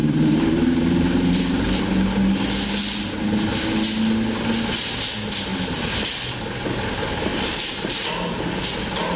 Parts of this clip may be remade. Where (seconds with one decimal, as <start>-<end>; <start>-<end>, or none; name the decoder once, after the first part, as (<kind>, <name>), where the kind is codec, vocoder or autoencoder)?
0.0-1.8 (vocoder, BigVGAN v2); 7.3-7.9